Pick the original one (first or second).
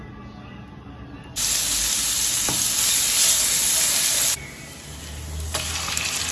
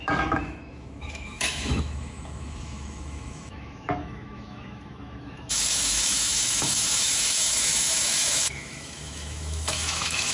first